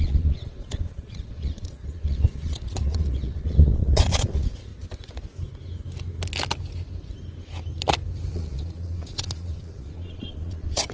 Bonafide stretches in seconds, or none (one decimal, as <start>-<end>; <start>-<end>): 4.7-8.3